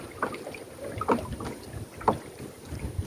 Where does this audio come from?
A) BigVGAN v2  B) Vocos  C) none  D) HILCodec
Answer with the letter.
A